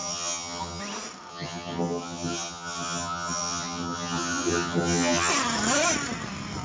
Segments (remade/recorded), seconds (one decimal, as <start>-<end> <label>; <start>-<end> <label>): 0.0-0.8 remade; 0.8-1.3 recorded; 1.3-5.3 remade; 5.3-6.6 recorded